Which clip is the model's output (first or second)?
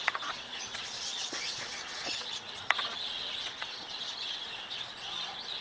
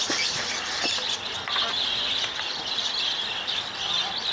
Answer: first